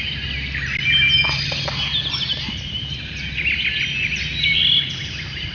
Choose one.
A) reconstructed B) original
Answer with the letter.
B